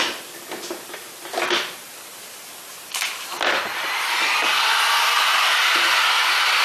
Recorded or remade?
recorded